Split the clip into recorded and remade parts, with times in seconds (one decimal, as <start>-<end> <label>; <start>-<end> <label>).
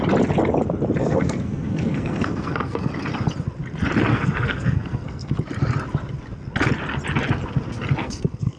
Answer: 0.0-1.0 recorded; 1.0-2.9 remade; 2.9-4.1 recorded; 4.1-5.3 remade; 5.3-8.0 recorded; 8.0-8.6 remade